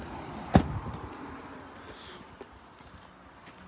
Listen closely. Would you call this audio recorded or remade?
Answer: recorded